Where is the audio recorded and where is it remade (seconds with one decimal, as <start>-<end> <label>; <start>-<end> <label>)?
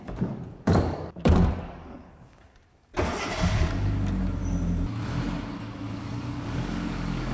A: 0.0-2.9 remade; 2.9-3.7 recorded; 3.7-4.4 remade; 4.4-5.5 recorded; 5.5-7.3 remade